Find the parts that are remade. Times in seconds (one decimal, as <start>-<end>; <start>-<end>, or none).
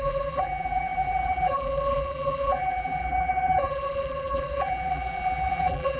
0.0-6.0